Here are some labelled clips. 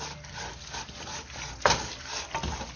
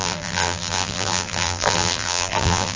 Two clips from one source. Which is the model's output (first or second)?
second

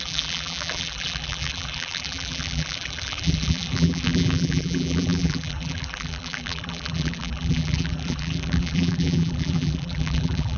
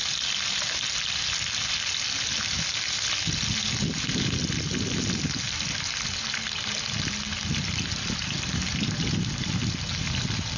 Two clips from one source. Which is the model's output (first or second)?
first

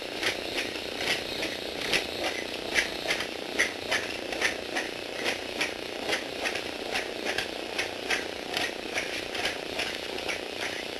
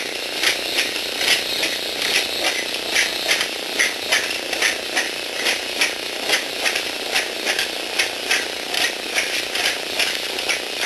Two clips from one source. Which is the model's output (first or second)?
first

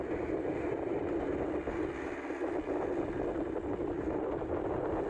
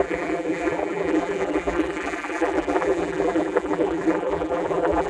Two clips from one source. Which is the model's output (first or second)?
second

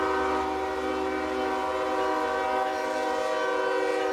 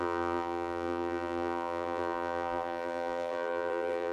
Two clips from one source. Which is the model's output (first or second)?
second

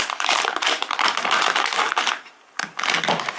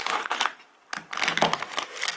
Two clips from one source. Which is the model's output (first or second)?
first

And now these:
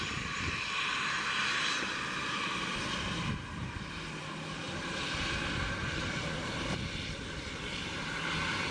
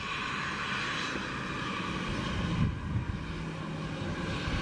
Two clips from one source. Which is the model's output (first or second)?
first